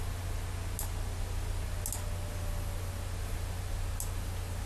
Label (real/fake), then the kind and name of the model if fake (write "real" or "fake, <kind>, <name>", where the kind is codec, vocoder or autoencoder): real